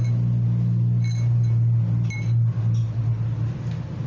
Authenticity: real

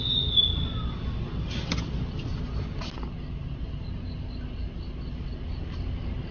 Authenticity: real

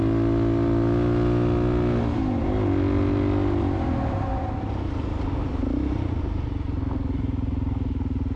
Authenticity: real